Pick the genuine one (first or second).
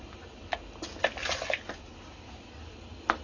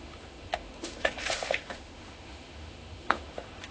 first